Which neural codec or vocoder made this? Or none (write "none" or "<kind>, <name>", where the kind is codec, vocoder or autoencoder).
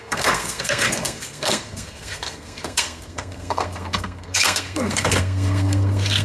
codec, SNAC